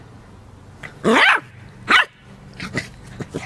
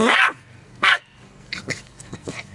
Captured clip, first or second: first